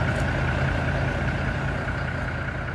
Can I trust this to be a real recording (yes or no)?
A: yes